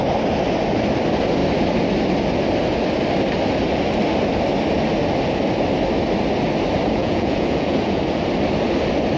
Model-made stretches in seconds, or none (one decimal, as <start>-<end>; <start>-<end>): 7.0-8.0